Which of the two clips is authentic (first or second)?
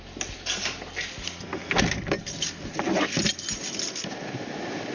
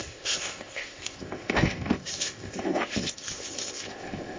first